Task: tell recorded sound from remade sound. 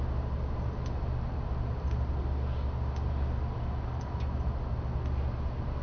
recorded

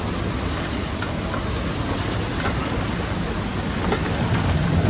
recorded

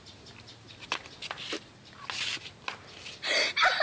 recorded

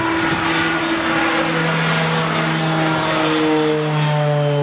recorded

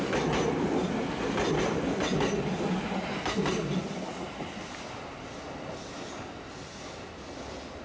recorded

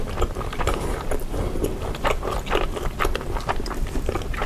recorded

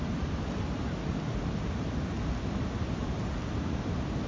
recorded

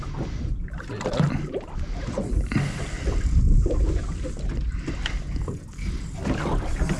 recorded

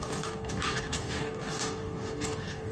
remade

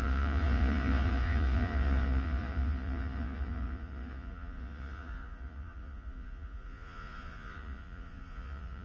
remade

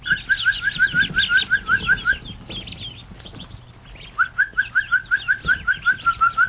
recorded